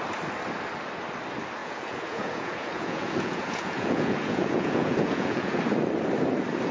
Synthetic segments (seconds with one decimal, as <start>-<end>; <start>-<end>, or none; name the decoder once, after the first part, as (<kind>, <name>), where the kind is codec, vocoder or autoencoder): 1.6-5.6 (vocoder, Vocos)